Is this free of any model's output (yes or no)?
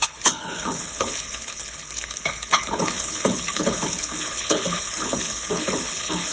no